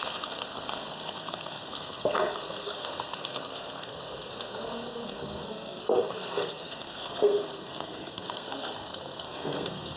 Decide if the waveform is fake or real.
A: fake